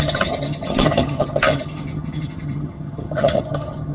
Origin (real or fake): fake